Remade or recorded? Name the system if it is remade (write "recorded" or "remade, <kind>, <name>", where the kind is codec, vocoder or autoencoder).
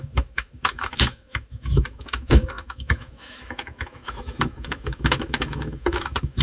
remade, autoencoder, DAC-VAE